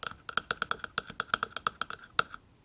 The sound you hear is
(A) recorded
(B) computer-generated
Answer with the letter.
A